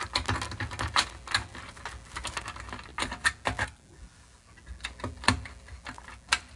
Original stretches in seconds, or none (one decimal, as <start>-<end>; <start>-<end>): 0.0-6.6